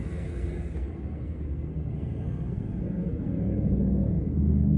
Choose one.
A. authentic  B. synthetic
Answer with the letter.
B